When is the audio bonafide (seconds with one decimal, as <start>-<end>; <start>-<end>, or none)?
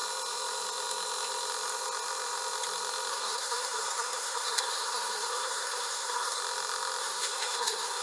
0.0-3.1; 6.4-7.0